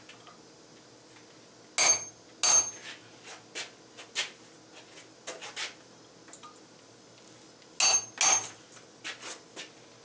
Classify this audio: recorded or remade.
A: recorded